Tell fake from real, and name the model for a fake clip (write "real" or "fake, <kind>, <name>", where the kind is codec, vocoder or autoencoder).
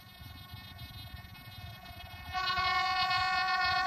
fake, vocoder, Vocos